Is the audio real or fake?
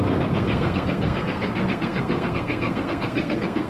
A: fake